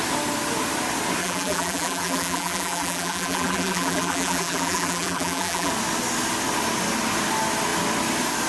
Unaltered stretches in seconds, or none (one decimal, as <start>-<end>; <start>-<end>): 0.0-1.2; 5.7-8.5